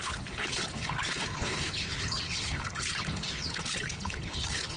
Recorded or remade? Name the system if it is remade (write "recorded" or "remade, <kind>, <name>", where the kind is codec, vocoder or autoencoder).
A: remade, codec, HILCodec